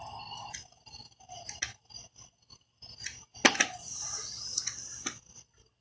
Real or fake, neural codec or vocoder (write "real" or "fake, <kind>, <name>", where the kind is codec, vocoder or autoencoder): real